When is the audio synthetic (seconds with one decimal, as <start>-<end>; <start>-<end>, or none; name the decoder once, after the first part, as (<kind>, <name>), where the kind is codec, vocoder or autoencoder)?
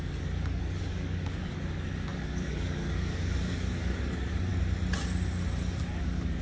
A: 0.0-4.5 (codec, DAC); 5.8-6.4